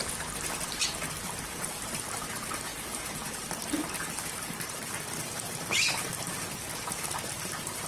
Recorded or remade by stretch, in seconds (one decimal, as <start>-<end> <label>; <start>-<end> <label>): 0.0-0.8 remade; 0.8-1.6 recorded; 1.6-7.9 remade